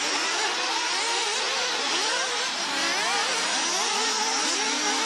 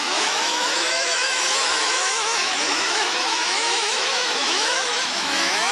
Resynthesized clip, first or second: second